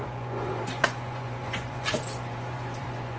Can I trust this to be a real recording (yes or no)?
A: no